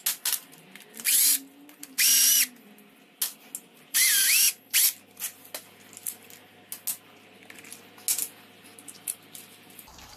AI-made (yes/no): no